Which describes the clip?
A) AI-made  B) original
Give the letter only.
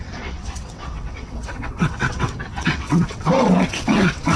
A